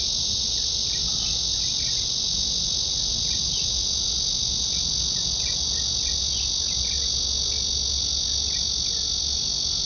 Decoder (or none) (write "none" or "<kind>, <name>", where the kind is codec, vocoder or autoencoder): none